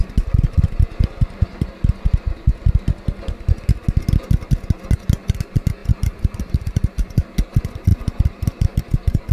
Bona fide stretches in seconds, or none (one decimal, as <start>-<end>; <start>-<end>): 0.0-5.8; 7.0-7.9; 8.8-9.3